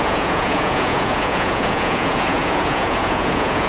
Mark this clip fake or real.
fake